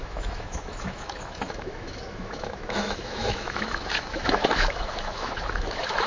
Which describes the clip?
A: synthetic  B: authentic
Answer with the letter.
A